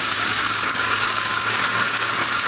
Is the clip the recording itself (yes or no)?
no